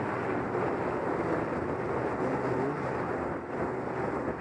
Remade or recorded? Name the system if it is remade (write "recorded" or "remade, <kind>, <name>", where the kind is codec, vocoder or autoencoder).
recorded